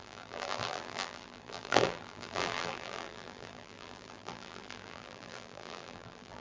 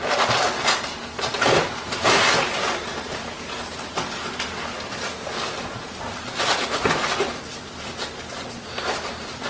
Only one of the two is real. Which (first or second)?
second